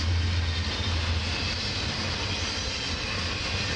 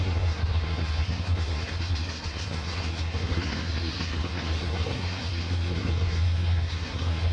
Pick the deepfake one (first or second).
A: second